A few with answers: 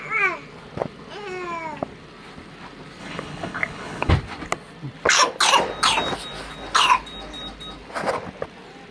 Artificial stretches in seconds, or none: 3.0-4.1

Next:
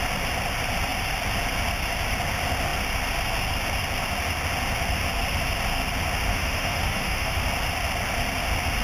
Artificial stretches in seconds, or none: 6.3-7.4

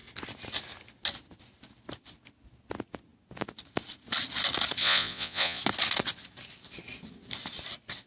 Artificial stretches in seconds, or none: 4.8-5.6